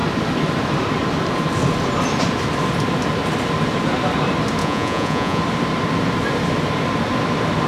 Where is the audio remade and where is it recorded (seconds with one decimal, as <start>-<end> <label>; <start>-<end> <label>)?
0.0-4.6 recorded; 4.6-5.4 remade; 5.4-7.7 recorded